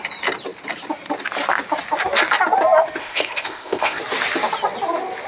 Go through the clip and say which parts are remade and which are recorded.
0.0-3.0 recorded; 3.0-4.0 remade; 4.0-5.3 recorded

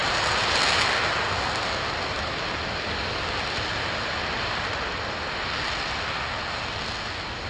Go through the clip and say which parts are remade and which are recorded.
0.0-7.5 recorded

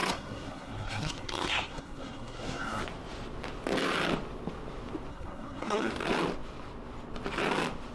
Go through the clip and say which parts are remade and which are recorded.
0.0-2.8 remade; 2.8-5.1 recorded; 5.1-5.9 remade; 5.9-7.9 recorded